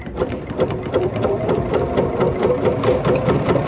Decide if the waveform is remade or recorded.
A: recorded